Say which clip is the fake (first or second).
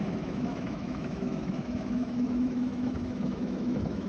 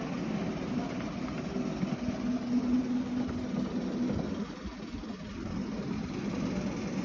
first